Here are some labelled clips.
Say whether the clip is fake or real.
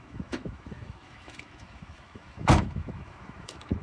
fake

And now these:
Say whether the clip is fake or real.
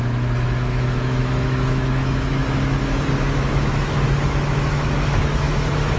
fake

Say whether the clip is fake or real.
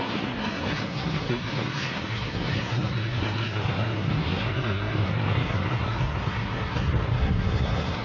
fake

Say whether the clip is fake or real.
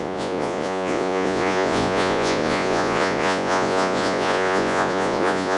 fake